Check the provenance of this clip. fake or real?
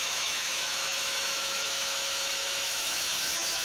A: fake